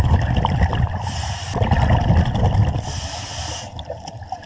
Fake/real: real